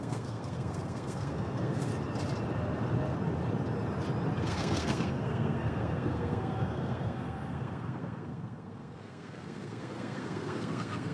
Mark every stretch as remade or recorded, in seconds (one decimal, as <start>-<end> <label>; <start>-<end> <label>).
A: 0.0-1.9 remade; 1.9-4.4 recorded; 4.4-11.1 remade